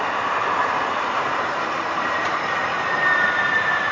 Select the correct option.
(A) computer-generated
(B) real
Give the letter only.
A